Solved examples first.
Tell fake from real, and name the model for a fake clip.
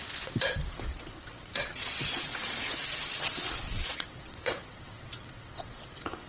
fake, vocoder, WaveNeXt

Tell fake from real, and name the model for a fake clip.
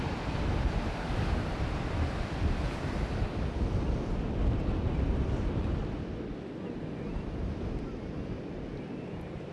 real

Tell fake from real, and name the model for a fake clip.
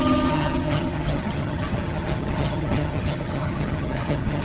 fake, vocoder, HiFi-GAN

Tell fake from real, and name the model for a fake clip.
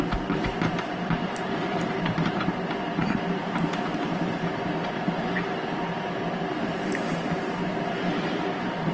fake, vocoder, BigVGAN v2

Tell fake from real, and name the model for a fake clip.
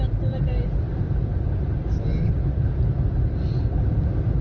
real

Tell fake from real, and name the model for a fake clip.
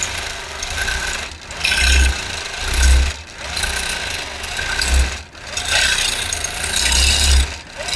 real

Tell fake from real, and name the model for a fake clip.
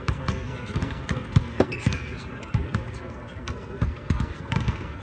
fake, codec, SNAC